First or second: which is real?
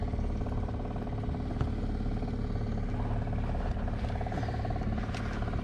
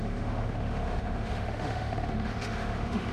first